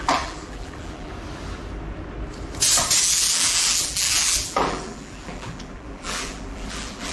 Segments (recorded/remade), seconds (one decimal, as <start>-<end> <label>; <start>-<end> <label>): 0.0-1.1 remade; 1.1-3.0 recorded; 3.0-7.1 remade